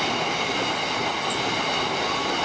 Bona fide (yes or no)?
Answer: yes